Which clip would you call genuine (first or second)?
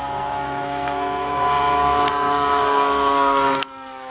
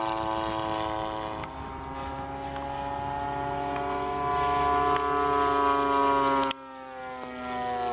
second